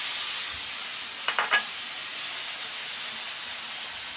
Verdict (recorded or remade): recorded